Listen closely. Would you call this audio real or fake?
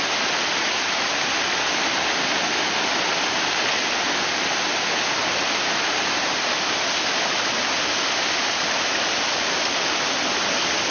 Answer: real